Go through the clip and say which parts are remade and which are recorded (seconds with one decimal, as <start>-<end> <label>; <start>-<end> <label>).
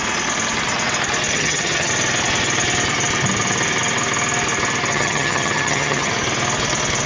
0.0-1.3 recorded; 1.3-1.9 remade; 1.9-4.9 recorded; 4.9-6.1 remade; 6.1-7.1 recorded